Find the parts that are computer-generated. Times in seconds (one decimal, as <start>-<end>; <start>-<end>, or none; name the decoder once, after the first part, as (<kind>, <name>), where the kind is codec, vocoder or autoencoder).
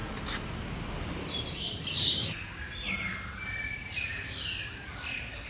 none